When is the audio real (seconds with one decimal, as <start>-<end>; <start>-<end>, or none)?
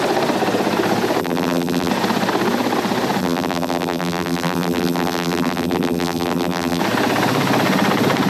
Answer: 0.0-1.2; 1.9-3.2; 6.8-8.3